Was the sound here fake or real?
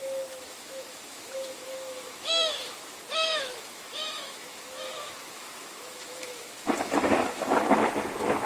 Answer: fake